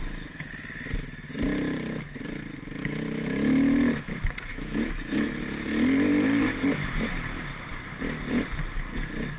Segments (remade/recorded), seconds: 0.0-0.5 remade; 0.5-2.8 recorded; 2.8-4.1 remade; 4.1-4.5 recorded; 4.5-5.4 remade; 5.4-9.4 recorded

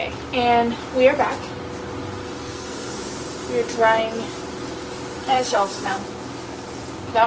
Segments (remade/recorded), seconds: 0.0-2.2 recorded; 2.2-3.0 remade; 3.0-5.2 recorded; 5.2-6.0 remade; 6.0-7.3 recorded

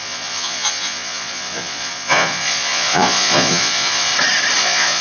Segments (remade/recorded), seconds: 0.0-4.1 remade; 4.1-4.6 recorded; 4.6-5.0 remade

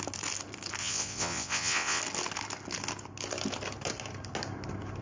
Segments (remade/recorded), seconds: 0.0-0.8 recorded; 0.8-2.0 remade; 2.0-5.0 recorded

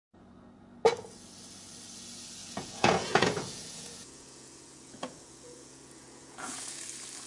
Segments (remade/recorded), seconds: 0.0-2.4 recorded; 2.4-6.8 remade; 6.8-7.3 recorded

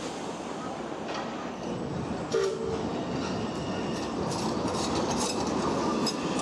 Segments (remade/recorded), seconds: 0.0-6.4 recorded